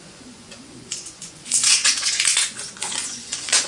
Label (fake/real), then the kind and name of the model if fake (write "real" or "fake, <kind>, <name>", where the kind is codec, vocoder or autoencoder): fake, vocoder, Vocos